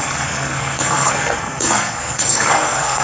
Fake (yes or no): yes